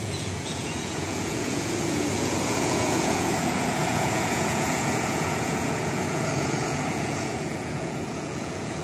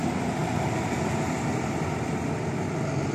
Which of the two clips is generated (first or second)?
first